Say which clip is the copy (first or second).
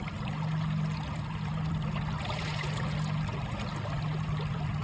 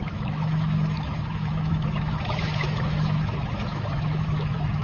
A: second